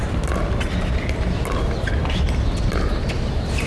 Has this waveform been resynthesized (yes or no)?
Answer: no